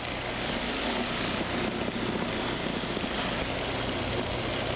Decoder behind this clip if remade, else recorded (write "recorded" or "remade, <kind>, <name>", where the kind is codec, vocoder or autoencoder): recorded